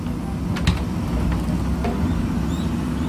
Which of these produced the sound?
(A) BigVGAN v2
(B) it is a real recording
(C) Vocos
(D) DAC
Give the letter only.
B